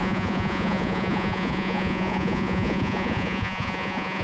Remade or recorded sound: remade